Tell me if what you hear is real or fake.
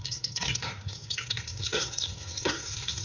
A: fake